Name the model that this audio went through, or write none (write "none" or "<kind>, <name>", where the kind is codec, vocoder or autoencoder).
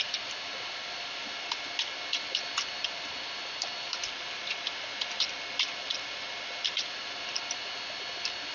none